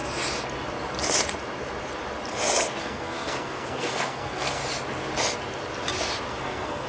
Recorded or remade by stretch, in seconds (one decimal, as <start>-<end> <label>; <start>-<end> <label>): 0.0-2.8 recorded; 2.8-4.6 remade; 4.6-6.3 recorded; 6.3-6.9 remade